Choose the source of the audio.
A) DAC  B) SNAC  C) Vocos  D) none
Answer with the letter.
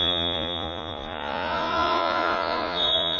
C